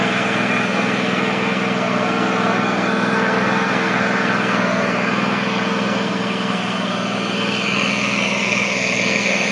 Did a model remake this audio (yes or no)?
yes